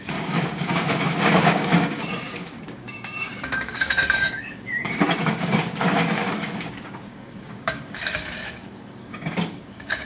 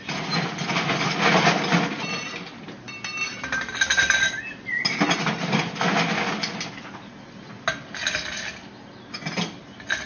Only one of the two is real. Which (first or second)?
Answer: second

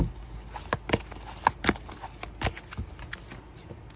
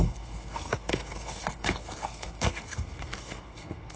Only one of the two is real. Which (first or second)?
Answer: first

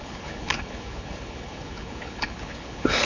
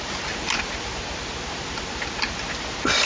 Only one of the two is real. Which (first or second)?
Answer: second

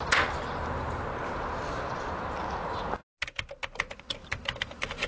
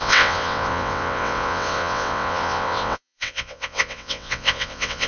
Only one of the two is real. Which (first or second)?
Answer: first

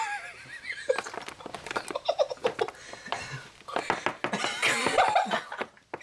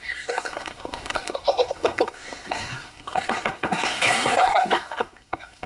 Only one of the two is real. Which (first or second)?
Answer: first